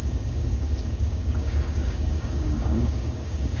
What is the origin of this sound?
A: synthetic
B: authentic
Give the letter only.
A